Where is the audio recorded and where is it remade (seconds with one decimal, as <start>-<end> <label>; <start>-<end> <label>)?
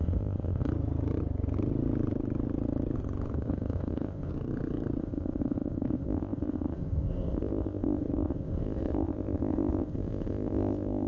0.0-0.7 remade; 0.7-3.3 recorded; 3.3-4.3 remade; 4.3-5.0 recorded; 5.0-11.1 remade